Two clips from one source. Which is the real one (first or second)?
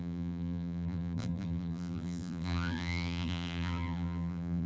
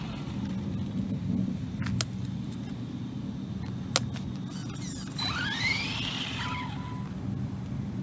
second